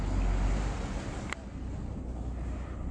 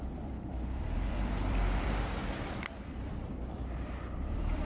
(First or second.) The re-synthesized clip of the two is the second